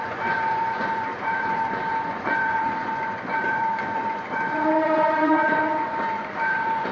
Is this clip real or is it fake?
fake